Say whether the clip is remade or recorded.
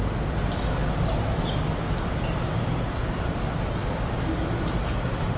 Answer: recorded